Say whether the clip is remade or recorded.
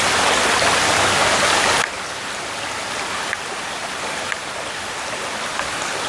recorded